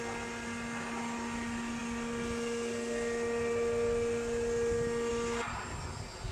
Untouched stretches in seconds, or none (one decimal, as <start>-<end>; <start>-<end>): 0.0-6.3